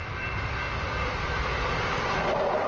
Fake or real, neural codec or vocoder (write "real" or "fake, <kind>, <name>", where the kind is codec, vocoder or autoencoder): fake, vocoder, BigVGAN v2